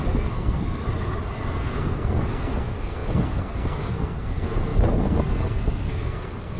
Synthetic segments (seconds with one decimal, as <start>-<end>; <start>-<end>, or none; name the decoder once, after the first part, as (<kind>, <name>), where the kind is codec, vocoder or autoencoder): 0.0-0.8 (codec, SNAC); 1.5-6.6